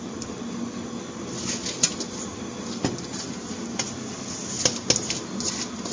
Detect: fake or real real